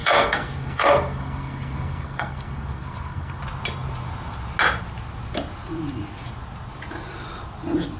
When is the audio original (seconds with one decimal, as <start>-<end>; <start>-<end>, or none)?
3.4-8.0